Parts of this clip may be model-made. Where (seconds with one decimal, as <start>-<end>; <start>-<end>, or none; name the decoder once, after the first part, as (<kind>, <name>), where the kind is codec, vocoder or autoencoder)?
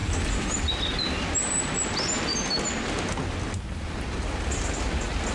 none